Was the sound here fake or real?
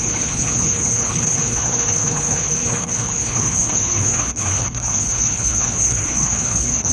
fake